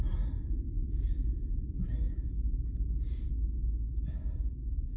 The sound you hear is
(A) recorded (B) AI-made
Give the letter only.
A